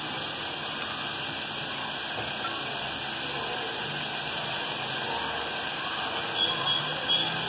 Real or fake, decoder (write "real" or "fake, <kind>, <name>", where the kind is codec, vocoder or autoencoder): real